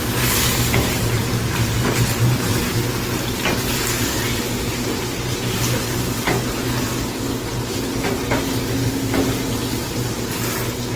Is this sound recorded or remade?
recorded